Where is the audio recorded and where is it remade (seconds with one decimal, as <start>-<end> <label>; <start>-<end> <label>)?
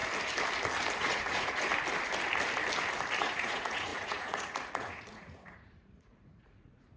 0.0-1.0 recorded; 1.0-1.7 remade; 1.7-3.2 recorded; 3.2-7.0 remade